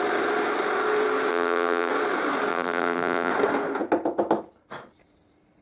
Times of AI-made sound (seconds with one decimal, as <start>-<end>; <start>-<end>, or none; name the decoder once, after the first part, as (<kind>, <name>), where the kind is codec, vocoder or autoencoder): 1.3-1.9 (vocoder, BigVGAN v2); 2.5-3.3